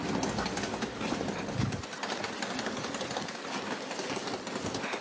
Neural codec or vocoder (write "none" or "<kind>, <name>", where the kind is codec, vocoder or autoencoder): none